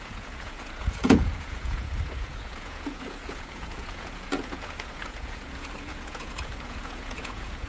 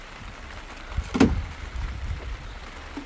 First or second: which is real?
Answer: second